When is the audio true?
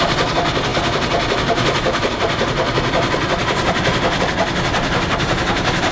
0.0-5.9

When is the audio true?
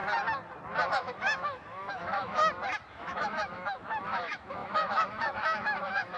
0.0-0.9; 2.4-2.9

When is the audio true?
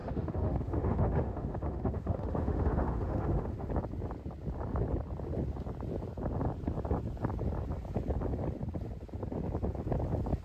3.7-10.4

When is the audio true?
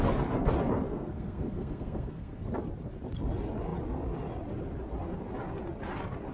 0.0-0.9; 2.5-6.3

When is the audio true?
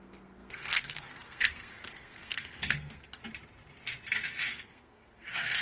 3.1-4.5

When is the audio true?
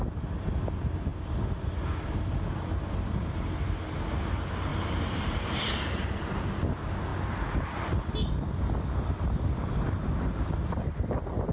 0.0-4.7; 5.7-11.5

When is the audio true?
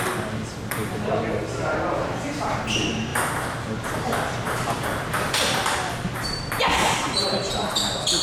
0.0-3.1; 7.7-8.2